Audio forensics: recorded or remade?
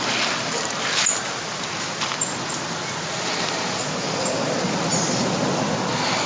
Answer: recorded